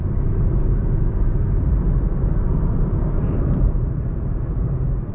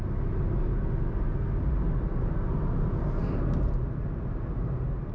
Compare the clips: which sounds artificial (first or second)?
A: first